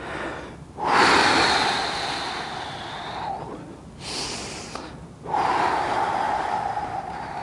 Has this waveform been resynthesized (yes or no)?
no